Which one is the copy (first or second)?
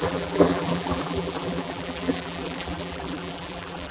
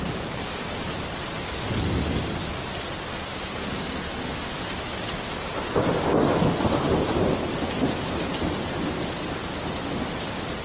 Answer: first